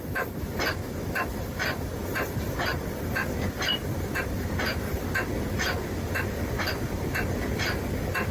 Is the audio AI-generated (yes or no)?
no